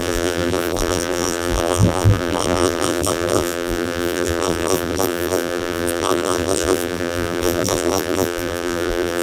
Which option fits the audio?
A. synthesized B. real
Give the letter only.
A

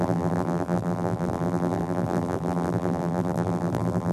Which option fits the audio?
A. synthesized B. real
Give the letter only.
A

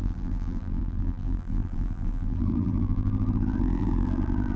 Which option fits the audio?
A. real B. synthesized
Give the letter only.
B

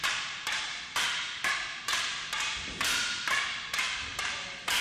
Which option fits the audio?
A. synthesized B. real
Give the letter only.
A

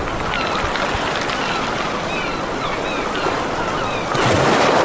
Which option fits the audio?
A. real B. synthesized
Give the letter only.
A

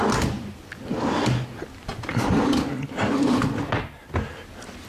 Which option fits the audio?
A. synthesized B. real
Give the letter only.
B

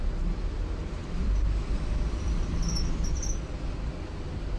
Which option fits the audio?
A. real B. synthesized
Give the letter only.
B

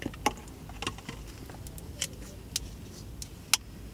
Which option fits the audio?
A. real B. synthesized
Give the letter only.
A